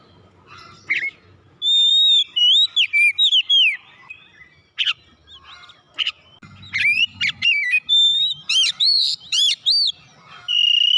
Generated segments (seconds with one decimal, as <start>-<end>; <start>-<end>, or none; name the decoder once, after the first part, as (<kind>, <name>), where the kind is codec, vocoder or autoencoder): 7.0-9.5 (vocoder, BigVGAN v2)

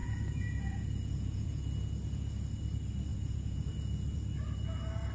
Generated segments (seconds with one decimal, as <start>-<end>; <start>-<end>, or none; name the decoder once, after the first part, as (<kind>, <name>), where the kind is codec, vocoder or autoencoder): 0.0-1.6 (vocoder, Vocos); 3.1-3.7

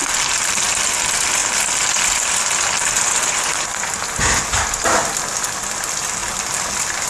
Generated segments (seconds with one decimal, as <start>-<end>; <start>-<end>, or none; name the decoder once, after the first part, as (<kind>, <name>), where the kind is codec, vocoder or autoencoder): none

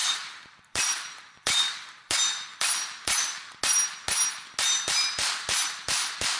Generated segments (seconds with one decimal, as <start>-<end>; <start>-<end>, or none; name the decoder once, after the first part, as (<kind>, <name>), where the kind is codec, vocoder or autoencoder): 0.0-3.6 (vocoder, BigVGAN v2)

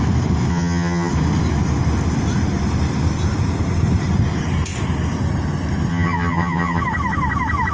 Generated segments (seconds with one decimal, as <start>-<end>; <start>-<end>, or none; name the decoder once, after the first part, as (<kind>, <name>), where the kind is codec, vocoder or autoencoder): 0.5-1.1 (vocoder, HiFi-GAN); 5.9-6.8

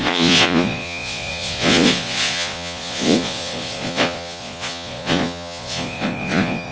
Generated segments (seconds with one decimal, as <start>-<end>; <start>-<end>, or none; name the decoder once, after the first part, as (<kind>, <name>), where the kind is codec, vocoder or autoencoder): 0.0-6.7 (vocoder, Vocos)

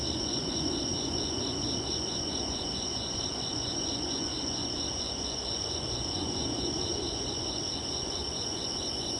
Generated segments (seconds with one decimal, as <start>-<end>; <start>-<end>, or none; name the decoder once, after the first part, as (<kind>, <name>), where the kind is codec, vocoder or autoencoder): 0.0-9.2 (vocoder, Vocos)

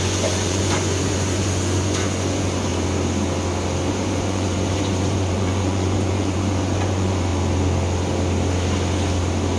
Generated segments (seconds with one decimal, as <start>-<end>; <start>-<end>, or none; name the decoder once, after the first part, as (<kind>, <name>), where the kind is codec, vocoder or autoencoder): 0.0-2.7 (vocoder, Vocos); 3.9-7.3